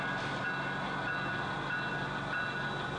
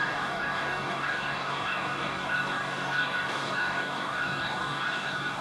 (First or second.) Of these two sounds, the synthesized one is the second